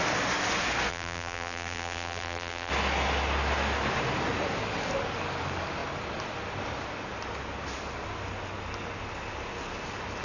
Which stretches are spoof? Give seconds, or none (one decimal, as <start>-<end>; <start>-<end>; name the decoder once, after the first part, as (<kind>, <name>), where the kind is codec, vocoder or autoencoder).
0.9-2.7 (vocoder, BigVGAN v2)